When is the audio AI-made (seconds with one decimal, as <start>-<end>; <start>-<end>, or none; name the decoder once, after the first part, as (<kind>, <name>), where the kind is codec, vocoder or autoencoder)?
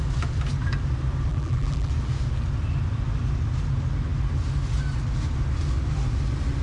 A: 1.3-1.9 (vocoder, BigVGAN v2)